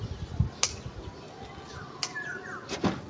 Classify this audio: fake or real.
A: real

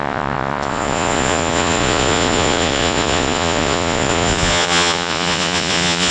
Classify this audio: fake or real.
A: fake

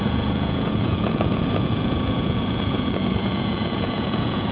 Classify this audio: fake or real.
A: fake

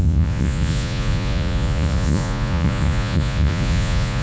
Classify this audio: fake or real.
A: fake